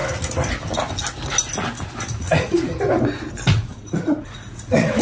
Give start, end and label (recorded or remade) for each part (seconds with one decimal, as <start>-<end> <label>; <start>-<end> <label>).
0.0-2.1 recorded; 2.1-2.7 remade; 2.7-3.5 recorded; 3.5-5.0 remade